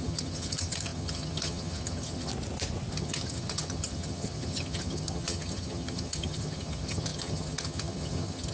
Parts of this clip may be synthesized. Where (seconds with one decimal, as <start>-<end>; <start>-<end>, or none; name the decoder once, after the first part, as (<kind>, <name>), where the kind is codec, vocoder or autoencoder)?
0.0-2.3 (vocoder, HiFi-GAN); 2.9-8.5